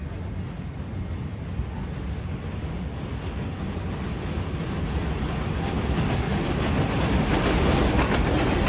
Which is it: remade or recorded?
recorded